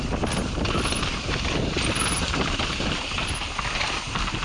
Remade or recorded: recorded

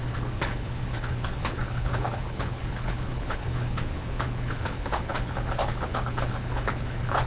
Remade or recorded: remade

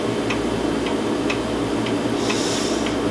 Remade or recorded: recorded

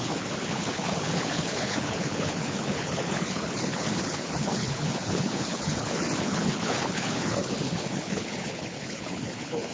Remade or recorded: remade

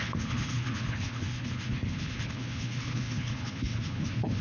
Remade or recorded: remade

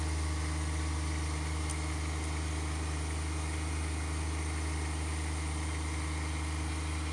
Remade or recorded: recorded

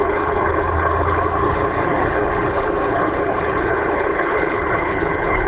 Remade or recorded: remade